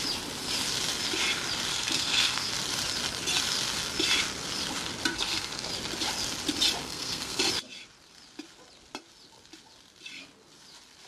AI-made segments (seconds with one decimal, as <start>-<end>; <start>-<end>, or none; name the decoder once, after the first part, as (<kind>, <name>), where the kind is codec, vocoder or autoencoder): 1.7-2.5 (codec, SNAC); 5.1-5.7; 6.8-7.4